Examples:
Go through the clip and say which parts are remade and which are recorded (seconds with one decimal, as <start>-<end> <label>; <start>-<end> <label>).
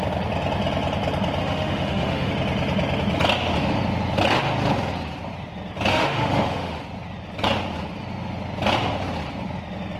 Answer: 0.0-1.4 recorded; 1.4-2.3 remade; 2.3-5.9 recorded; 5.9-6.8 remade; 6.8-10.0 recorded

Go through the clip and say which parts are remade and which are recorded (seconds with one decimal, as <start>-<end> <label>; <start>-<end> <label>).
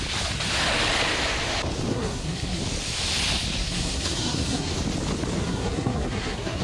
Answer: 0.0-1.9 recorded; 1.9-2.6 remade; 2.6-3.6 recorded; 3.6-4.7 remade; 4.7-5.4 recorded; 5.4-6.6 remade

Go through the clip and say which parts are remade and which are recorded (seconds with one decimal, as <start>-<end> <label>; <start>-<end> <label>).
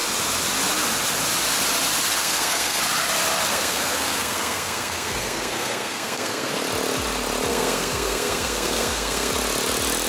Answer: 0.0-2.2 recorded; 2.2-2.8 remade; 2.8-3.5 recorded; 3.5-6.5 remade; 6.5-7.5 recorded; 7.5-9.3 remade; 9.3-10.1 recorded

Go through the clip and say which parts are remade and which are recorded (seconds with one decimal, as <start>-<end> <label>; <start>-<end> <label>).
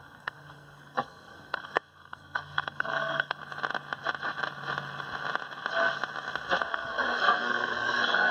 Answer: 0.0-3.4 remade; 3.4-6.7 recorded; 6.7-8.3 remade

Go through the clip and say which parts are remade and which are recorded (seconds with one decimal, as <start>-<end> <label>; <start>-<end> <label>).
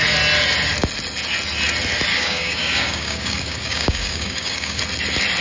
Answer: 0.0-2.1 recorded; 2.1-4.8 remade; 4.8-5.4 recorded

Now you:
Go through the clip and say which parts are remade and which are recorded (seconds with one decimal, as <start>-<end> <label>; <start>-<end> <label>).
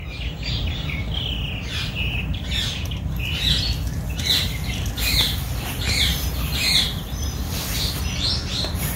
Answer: 0.0-6.1 recorded; 6.1-6.8 remade; 6.8-9.0 recorded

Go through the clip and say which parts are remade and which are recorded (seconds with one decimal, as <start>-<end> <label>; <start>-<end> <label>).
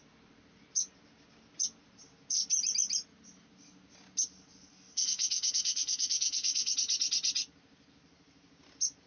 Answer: 0.0-4.7 recorded; 4.7-6.7 remade; 6.7-9.1 recorded